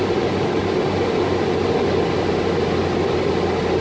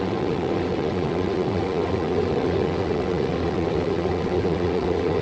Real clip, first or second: first